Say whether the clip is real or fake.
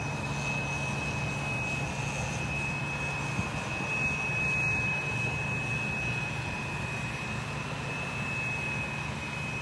real